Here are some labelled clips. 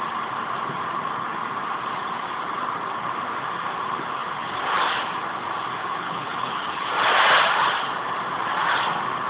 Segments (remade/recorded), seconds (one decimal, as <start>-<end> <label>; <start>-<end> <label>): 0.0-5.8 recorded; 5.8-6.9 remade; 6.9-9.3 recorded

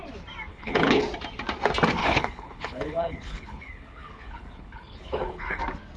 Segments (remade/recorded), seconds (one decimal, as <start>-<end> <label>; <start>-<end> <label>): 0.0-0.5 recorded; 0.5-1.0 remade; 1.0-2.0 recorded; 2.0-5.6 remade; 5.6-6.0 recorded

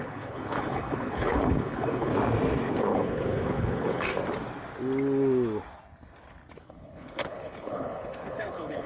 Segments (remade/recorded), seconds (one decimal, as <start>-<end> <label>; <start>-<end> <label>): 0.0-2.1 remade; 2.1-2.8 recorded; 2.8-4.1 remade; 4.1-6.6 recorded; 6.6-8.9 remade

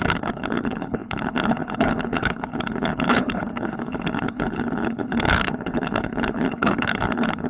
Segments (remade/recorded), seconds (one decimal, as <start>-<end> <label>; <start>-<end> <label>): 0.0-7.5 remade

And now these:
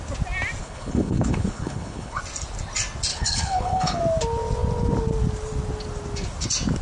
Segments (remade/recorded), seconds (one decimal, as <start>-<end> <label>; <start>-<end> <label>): 0.0-0.6 recorded; 0.6-2.2 remade; 2.2-3.1 recorded; 3.1-4.0 remade; 4.0-6.8 recorded

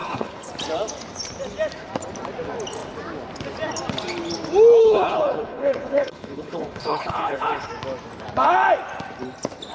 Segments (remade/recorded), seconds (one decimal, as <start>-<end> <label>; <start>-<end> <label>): 0.0-0.5 remade; 0.5-4.8 recorded; 4.8-7.7 remade; 7.7-9.7 recorded